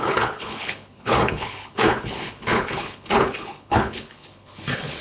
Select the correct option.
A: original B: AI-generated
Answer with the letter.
B